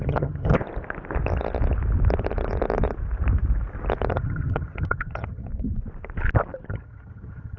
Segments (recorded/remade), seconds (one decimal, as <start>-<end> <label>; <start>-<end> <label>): 0.0-0.5 remade; 0.5-4.1 recorded; 4.1-5.5 remade; 5.5-6.7 recorded; 6.7-7.6 remade